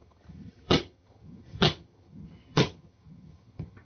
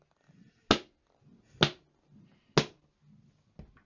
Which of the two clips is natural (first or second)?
second